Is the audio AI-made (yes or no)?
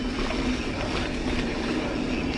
no